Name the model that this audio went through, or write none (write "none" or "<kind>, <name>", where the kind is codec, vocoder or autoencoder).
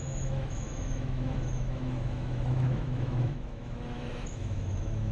autoencoder, DAC-VAE